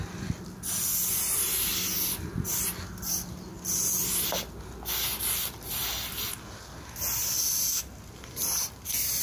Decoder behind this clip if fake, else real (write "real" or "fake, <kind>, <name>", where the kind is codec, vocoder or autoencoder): real